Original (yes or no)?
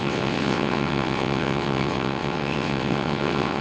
no